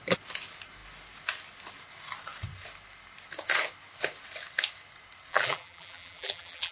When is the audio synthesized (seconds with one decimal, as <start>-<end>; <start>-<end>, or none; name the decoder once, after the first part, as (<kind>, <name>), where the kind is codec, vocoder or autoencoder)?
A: 5.3-6.7 (vocoder, BigVGAN v2)